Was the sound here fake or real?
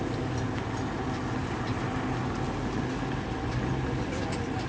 real